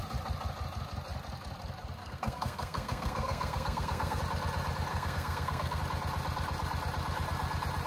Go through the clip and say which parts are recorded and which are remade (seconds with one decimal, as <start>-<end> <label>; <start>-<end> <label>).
0.0-2.0 recorded; 2.0-4.2 remade; 4.2-4.9 recorded; 4.9-5.8 remade; 5.8-7.9 recorded